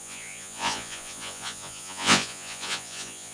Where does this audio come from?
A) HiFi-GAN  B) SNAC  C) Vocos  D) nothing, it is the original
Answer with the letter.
C